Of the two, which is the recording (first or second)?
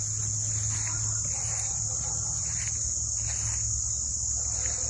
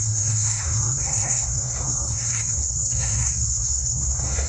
first